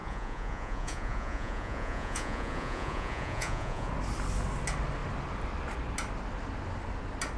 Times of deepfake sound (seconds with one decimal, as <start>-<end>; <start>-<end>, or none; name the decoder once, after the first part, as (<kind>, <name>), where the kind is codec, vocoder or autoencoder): 0.0-3.9 (vocoder, Vocos)